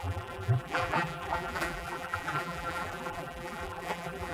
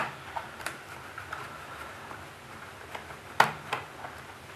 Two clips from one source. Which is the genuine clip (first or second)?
second